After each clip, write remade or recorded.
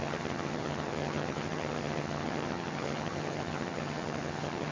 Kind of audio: remade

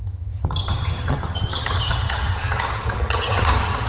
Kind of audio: remade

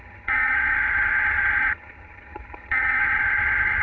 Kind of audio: remade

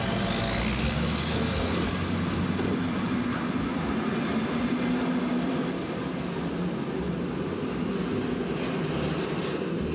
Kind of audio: recorded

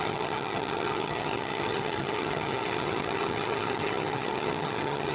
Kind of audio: remade